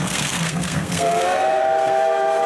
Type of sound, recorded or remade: remade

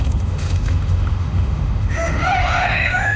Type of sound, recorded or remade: remade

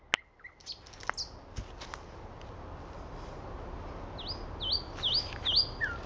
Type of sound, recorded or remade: recorded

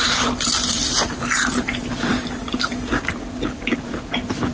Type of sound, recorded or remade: recorded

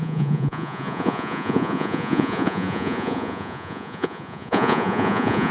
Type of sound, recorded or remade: remade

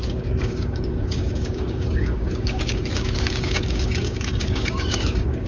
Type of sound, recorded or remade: remade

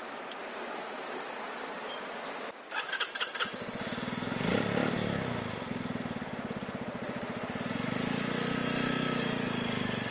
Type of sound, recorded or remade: recorded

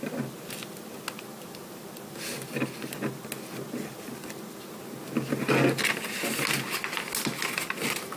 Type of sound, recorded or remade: recorded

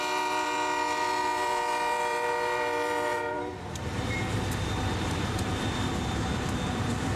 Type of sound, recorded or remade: remade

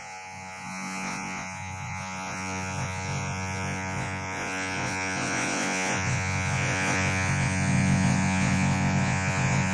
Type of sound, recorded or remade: remade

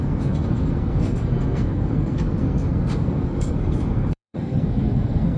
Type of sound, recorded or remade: remade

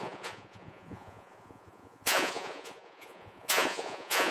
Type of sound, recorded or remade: remade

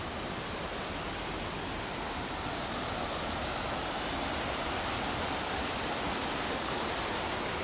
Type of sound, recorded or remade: recorded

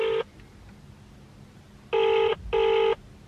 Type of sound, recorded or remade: recorded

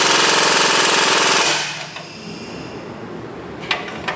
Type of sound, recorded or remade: recorded